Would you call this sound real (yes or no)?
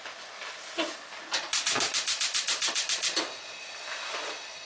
yes